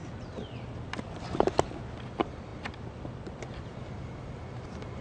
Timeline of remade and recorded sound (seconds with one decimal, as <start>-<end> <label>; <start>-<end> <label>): 0.0-5.0 recorded